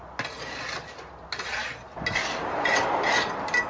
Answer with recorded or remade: recorded